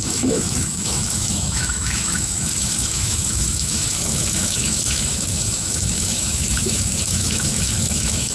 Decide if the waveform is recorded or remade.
remade